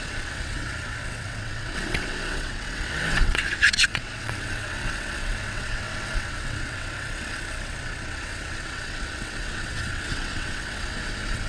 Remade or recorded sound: remade